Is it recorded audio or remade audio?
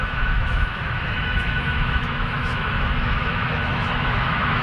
remade